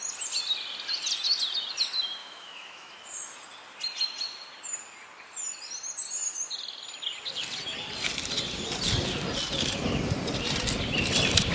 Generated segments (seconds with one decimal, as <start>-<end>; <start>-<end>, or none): 2.2-2.9